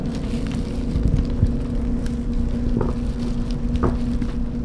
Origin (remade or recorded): recorded